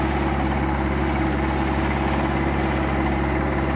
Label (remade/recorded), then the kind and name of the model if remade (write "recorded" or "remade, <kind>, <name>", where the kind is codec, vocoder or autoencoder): recorded